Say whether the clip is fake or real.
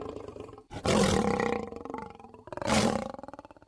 real